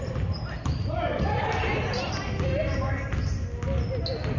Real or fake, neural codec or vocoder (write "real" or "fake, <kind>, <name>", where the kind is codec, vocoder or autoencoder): real